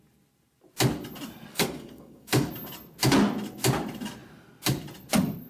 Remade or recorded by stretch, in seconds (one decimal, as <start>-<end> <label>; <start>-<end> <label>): 0.0-1.5 recorded; 1.5-2.5 remade; 2.5-5.5 recorded